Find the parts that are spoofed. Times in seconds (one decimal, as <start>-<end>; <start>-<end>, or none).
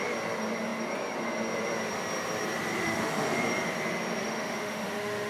2.8-3.4; 4.2-5.3